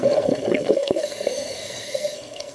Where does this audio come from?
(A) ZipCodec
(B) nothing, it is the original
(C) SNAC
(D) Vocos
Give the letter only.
C